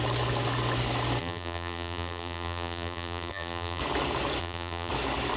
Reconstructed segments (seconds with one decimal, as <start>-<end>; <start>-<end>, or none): 1.2-3.8; 4.4-4.9